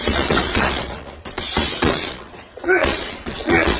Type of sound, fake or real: fake